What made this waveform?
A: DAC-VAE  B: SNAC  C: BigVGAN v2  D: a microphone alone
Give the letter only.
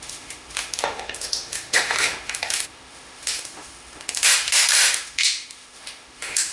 A